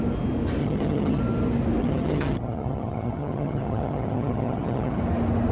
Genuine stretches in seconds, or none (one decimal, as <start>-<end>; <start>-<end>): 0.0-0.6; 1.2-1.8; 5.0-5.5